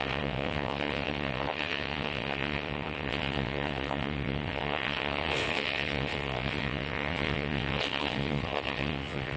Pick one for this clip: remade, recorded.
remade